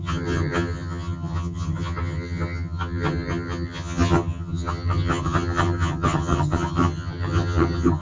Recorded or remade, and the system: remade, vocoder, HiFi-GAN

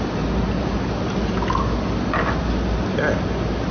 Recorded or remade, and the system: recorded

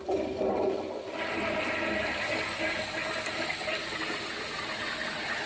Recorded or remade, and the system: recorded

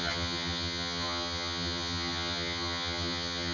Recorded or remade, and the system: remade, vocoder, HiFi-GAN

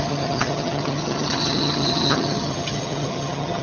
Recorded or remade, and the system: remade, vocoder, HiFi-GAN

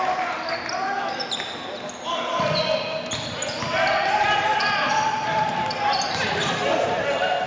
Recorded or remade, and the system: recorded